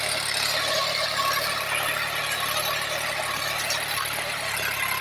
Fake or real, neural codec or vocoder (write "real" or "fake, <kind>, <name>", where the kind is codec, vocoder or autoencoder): real